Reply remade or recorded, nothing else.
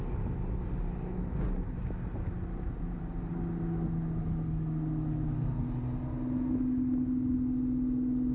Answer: recorded